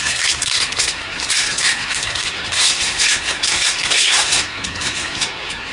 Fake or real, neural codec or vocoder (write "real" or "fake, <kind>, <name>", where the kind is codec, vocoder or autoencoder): fake, codec, SNAC